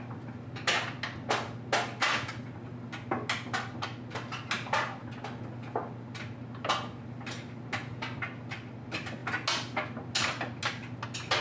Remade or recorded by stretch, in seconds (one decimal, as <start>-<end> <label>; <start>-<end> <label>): 0.0-11.4 recorded